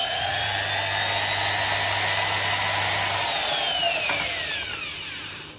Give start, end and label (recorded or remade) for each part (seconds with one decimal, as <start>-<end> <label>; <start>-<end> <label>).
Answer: 0.0-0.5 remade; 0.5-5.6 recorded